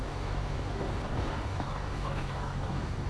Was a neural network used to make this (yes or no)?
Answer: yes